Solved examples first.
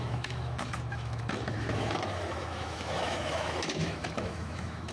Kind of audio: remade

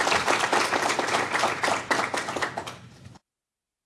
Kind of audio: recorded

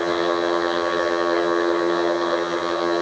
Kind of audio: remade